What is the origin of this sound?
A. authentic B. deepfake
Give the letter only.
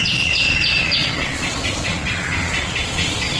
B